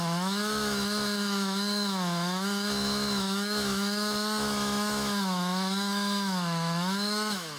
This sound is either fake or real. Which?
fake